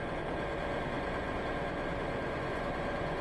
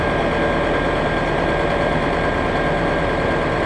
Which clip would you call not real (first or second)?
first